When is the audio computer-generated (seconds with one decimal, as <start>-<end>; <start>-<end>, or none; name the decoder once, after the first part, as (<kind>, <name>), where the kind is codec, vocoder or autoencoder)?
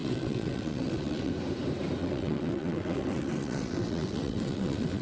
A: 0.0-1.3 (vocoder, WaveNeXt); 2.0-5.0